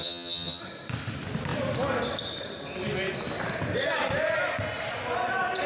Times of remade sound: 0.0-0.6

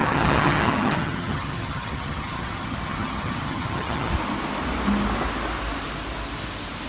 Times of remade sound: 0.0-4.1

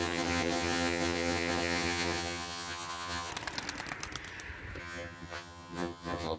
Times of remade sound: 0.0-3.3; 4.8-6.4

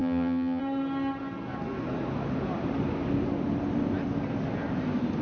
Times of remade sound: 0.0-0.6